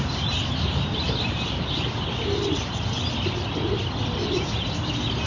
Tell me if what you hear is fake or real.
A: real